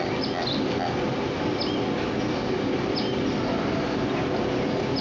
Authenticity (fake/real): real